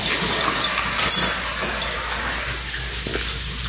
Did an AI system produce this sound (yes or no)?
no